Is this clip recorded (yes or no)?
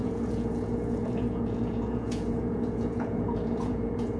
no